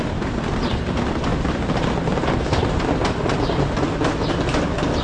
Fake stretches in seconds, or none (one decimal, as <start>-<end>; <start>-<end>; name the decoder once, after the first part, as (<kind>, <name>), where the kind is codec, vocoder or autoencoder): none